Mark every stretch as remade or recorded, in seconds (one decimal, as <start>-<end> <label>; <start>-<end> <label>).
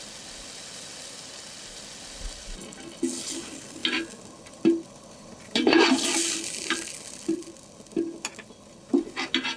0.0-9.6 recorded